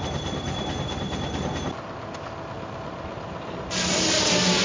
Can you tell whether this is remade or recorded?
recorded